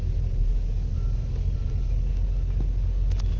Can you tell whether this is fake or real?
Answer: real